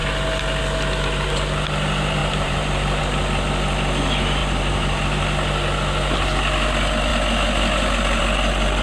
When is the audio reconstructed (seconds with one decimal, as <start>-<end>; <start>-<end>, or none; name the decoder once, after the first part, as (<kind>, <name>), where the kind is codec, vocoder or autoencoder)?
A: 2.2-3.0 (vocoder, BigVGAN v2); 4.4-5.0